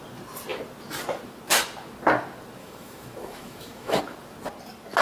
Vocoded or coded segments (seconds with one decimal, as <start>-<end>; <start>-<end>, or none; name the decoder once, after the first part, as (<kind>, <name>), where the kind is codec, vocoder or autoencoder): 2.6-4.0 (autoencoder, DAC-VAE)